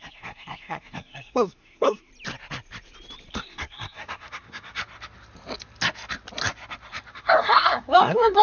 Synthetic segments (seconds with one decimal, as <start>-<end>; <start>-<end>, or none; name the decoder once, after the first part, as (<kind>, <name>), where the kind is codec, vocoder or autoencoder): 0.0-2.1 (codec, SNAC); 3.3-4.8; 7.1-8.4